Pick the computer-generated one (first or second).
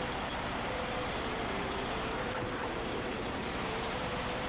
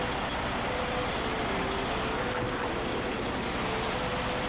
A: first